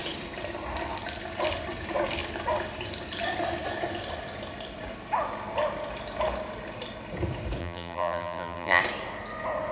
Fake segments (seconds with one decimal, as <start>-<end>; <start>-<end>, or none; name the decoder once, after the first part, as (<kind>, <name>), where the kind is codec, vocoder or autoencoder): 7.6-8.8 (vocoder, BigVGAN v2)

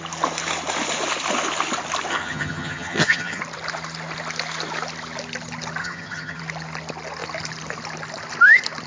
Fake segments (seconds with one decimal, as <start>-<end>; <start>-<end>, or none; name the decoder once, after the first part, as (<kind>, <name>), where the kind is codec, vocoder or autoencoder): 2.1-3.4 (vocoder, HiFi-GAN); 5.8-6.4

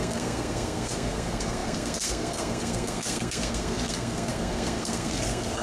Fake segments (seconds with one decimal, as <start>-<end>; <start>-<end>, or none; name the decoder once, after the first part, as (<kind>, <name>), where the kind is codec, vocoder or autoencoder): 0.0-5.6 (codec, SNAC)

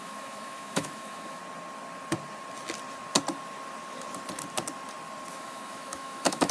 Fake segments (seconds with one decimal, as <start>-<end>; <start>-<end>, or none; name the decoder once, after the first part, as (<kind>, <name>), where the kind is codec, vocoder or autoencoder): 0.0-1.4 (autoencoder, DAC-VAE); 5.3-6.5

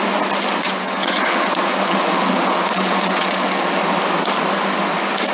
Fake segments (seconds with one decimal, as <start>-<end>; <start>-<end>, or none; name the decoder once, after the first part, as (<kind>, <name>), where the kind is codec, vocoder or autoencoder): 0.6-3.8 (vocoder, WaveNeXt)

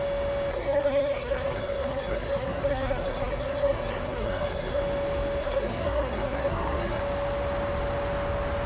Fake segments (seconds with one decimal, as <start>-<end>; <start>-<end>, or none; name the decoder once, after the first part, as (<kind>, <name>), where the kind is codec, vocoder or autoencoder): 0.5-4.8 (codec, SNAC); 5.4-7.0

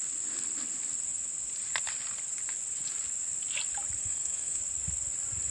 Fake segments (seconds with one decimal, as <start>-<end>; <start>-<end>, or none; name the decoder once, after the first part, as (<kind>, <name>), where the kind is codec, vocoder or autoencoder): 4.0-4.6 (codec, SNAC)